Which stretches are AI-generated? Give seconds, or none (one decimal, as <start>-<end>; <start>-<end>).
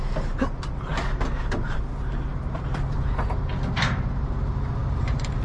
0.9-1.8; 2.3-3.5; 4.8-5.4